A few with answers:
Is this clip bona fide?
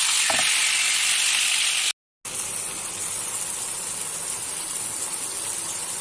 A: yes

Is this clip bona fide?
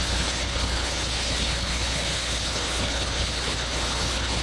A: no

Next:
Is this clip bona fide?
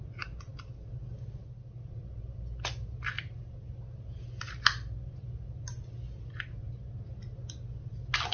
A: yes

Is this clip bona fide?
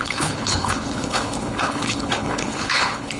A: no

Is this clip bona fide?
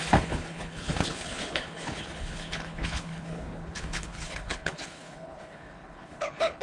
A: no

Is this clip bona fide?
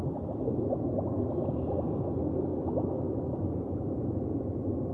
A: yes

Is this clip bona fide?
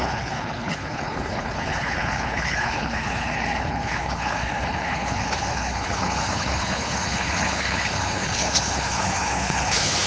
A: no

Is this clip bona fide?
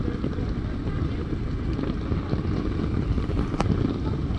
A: yes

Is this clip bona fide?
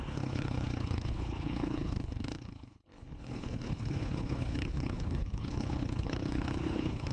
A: no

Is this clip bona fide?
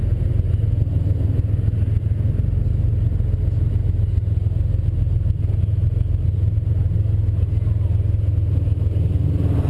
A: yes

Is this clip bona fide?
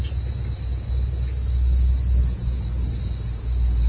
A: yes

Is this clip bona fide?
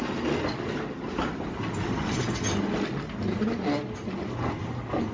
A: yes